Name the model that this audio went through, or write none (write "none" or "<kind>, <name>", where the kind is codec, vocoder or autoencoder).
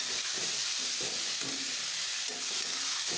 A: none